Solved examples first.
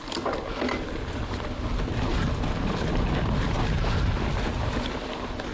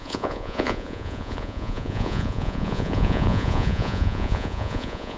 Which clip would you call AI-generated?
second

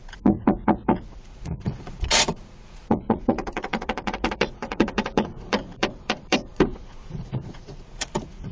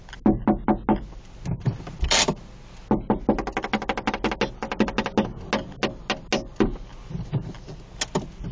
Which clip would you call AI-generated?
first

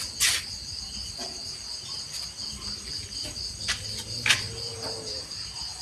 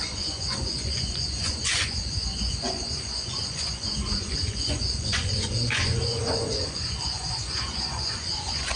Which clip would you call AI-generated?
second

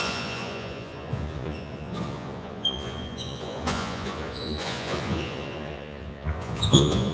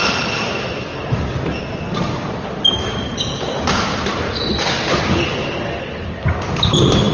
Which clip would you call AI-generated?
first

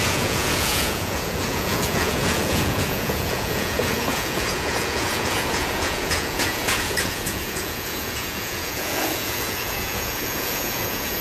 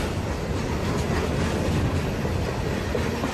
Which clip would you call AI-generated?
first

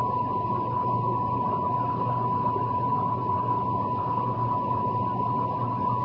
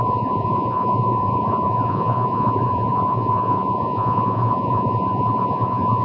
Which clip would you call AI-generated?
second